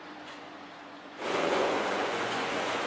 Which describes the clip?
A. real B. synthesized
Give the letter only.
B